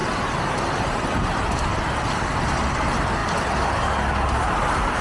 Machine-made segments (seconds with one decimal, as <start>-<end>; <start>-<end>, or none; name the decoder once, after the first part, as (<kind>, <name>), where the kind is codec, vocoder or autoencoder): none